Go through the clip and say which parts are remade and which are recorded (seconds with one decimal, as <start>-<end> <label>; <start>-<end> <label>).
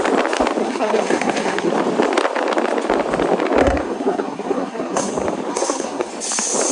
0.0-0.6 recorded; 0.6-1.7 remade; 1.7-3.6 recorded; 3.6-5.1 remade; 5.1-5.5 recorded; 5.5-6.1 remade; 6.1-6.7 recorded